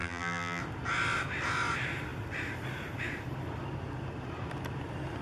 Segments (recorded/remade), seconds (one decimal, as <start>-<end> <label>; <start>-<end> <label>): 0.0-0.6 remade; 0.6-5.2 recorded